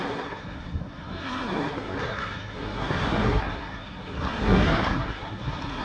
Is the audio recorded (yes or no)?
no